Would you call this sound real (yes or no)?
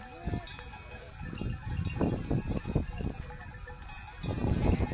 yes